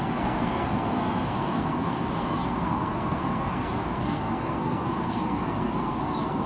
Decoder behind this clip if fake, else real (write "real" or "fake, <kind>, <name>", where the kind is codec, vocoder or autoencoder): fake, codec, SNAC